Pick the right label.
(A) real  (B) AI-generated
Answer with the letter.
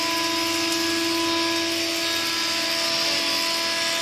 A